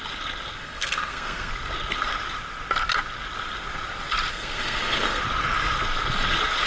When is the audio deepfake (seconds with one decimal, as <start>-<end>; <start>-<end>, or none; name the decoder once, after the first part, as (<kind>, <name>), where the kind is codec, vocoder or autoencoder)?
0.6-1.5 (codec, SNAC); 4.3-5.2